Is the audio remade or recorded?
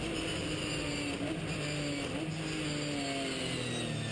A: recorded